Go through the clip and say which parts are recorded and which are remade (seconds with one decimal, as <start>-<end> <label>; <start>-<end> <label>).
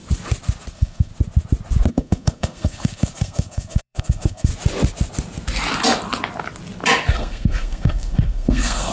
0.0-0.7 recorded; 0.7-1.1 remade; 1.1-1.9 recorded; 1.9-4.5 remade; 4.5-7.1 recorded; 7.1-8.9 remade